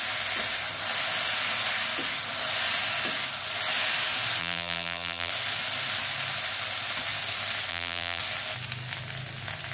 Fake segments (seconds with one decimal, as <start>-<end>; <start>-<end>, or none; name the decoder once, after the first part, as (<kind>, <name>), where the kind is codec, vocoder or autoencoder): 4.4-5.3 (vocoder, BigVGAN v2); 7.7-8.2